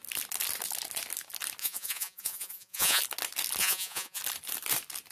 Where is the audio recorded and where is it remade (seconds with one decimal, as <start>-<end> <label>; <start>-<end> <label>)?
0.0-1.6 recorded; 1.6-3.0 remade; 3.0-3.6 recorded; 3.6-4.2 remade; 4.2-5.1 recorded